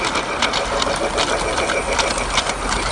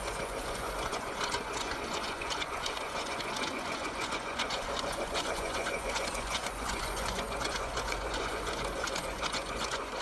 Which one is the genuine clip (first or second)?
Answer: first